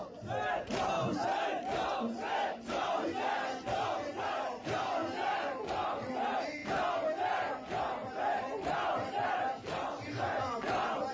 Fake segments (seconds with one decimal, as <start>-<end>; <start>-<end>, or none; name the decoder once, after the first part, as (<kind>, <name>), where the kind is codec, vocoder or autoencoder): none